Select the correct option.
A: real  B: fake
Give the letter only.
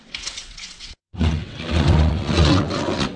B